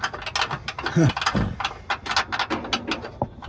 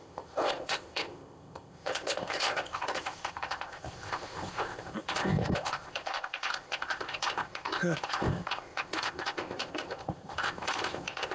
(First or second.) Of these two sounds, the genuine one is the first